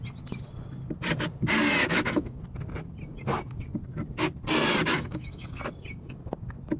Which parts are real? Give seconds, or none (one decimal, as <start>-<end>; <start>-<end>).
0.0-1.8; 2.4-4.9; 5.6-6.8